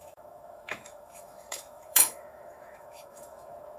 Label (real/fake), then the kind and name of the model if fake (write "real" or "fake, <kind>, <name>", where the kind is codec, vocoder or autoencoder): fake, autoencoder, DAC-VAE